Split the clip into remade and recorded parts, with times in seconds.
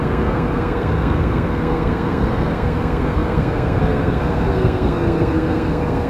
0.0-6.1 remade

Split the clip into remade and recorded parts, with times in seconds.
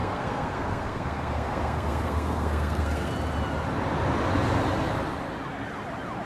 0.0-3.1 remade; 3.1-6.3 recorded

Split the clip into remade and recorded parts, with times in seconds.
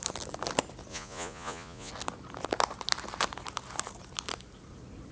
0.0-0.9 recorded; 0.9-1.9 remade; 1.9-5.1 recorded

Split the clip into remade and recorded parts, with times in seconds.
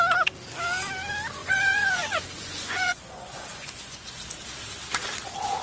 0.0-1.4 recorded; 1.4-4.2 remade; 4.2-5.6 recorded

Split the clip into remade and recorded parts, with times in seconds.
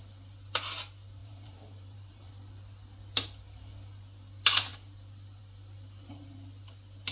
0.0-1.2 recorded; 1.2-2.3 remade; 2.3-7.1 recorded